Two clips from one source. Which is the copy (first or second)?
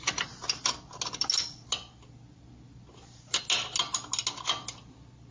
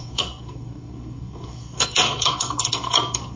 second